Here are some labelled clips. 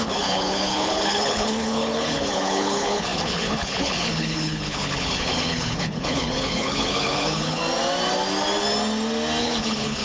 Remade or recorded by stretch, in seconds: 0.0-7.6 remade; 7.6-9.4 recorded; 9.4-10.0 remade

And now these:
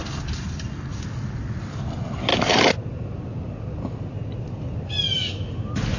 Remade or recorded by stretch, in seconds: 0.0-6.0 recorded

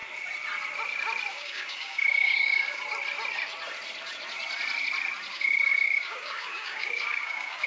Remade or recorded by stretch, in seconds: 0.0-1.3 recorded; 1.3-2.8 remade; 2.8-5.3 recorded; 5.3-7.7 remade

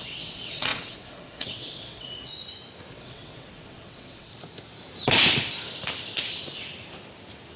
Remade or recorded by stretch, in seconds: 0.0-2.3 remade; 2.3-2.9 recorded; 2.9-4.3 remade; 4.3-7.6 recorded

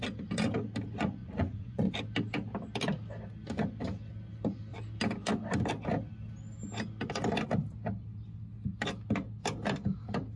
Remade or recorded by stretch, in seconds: 0.0-1.2 recorded; 1.2-1.9 remade; 1.9-10.4 recorded

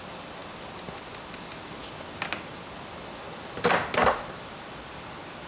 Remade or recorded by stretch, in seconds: 0.0-5.5 recorded